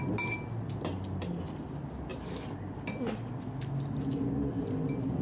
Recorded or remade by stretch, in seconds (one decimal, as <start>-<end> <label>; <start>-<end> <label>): 0.0-5.2 recorded

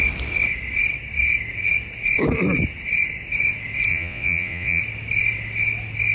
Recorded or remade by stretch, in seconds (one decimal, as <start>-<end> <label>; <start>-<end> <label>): 0.0-3.9 recorded; 3.9-4.8 remade; 4.8-6.1 recorded

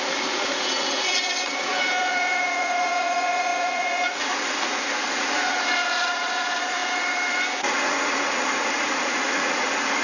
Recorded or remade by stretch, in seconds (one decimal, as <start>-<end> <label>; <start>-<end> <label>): 0.0-10.0 remade

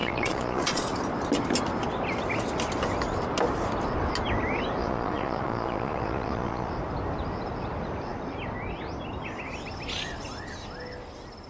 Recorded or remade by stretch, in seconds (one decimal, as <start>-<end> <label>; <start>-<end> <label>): 0.0-0.8 remade; 0.8-4.8 recorded; 4.8-6.7 remade; 6.7-11.5 recorded

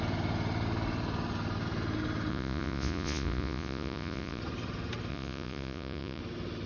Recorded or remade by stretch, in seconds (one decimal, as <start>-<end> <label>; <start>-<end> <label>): 0.0-2.3 recorded; 2.3-4.4 remade; 4.4-5.1 recorded; 5.1-6.2 remade; 6.2-6.7 recorded

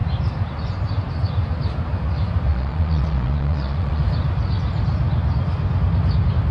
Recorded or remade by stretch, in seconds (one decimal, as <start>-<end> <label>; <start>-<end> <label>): 0.0-2.5 recorded; 2.5-4.0 remade; 4.0-6.5 recorded

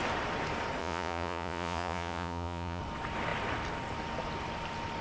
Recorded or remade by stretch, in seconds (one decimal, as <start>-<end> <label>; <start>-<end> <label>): 0.0-0.8 recorded; 0.8-2.8 remade; 2.8-5.0 recorded